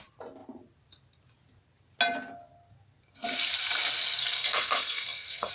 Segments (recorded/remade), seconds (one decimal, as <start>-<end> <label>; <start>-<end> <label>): 0.0-4.2 recorded; 4.2-5.5 remade